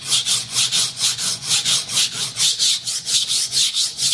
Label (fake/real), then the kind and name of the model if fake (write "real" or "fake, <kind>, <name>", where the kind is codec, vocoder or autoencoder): fake, vocoder, Vocos